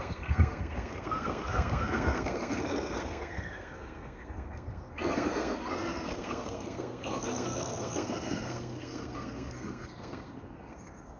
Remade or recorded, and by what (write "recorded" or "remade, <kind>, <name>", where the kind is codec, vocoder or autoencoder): remade, codec, SNAC